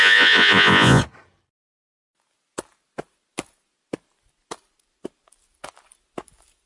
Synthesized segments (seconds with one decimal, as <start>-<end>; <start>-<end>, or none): 0.0-1.0